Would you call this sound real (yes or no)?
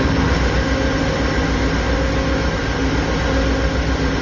yes